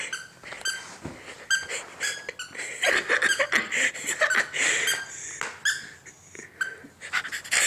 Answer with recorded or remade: recorded